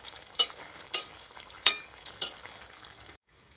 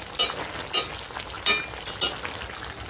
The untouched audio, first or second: second